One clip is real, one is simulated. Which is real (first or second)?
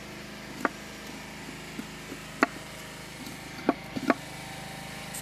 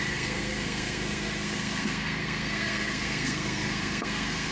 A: first